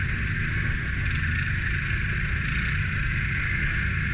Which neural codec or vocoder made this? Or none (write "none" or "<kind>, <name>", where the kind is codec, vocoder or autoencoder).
none